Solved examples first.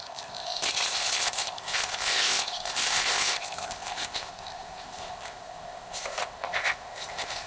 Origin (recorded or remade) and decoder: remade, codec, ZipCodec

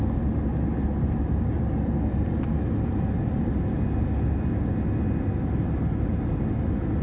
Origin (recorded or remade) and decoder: recorded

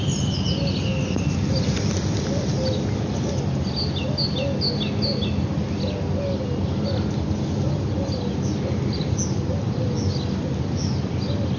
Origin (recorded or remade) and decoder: recorded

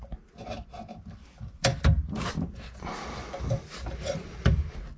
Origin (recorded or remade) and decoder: recorded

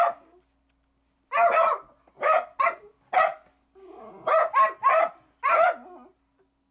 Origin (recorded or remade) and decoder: recorded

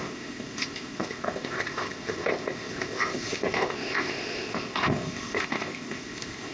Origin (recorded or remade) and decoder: remade, codec, ZipCodec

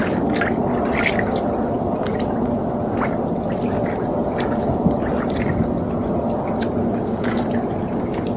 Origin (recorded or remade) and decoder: recorded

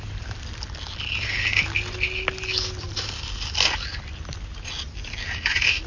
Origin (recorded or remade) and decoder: recorded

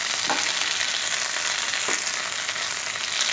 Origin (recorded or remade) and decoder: recorded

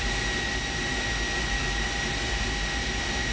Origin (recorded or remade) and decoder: recorded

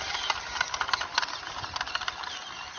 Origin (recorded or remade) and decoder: recorded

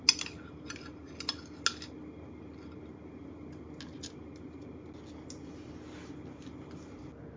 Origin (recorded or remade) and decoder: recorded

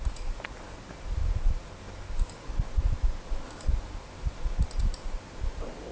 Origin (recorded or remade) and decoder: recorded